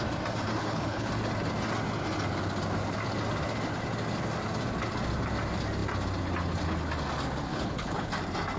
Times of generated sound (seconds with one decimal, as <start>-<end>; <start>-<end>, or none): 0.6-1.1; 7.5-8.1